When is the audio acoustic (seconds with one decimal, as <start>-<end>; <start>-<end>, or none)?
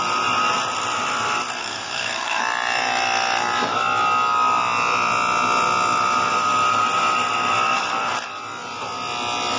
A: 0.0-1.6; 2.4-9.6